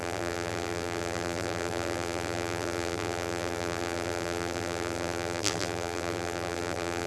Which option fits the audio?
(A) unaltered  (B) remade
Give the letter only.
B